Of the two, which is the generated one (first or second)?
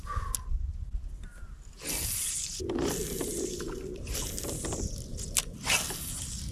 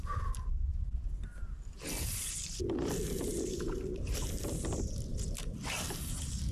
second